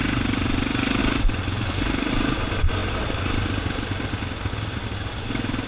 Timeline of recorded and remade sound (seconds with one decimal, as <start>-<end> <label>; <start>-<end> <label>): 0.0-5.7 recorded